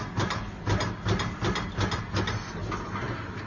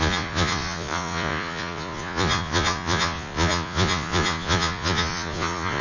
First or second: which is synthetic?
second